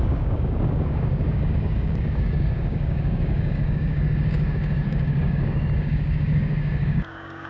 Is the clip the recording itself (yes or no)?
no